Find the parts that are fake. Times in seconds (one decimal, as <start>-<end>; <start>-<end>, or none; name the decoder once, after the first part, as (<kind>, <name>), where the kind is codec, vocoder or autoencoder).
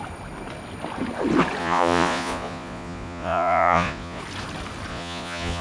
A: 1.6-4.2 (vocoder, Vocos); 4.9-5.6